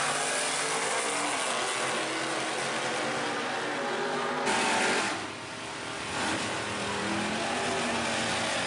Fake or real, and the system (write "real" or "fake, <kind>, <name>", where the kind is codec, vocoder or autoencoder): real